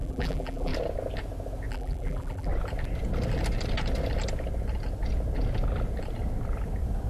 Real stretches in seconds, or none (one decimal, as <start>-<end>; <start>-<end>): 0.7-1.7; 2.5-7.1